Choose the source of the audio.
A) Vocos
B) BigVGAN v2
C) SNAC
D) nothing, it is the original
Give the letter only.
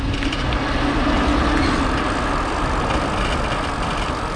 D